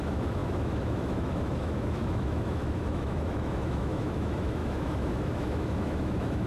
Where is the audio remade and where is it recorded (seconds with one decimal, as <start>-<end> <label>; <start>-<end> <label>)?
0.0-6.5 remade